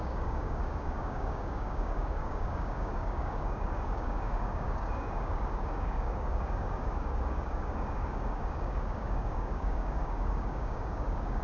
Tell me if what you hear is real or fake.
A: fake